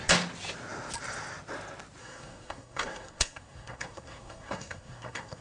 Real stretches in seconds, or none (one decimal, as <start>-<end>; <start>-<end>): 0.0-2.0